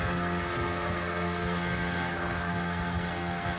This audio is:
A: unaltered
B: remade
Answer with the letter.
B